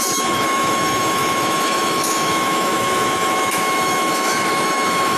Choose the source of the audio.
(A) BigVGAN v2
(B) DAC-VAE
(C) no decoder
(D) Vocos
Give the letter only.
B